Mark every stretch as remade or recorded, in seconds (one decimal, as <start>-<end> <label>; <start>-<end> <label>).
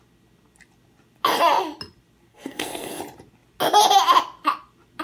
0.0-2.3 recorded; 2.3-3.0 remade; 3.0-5.0 recorded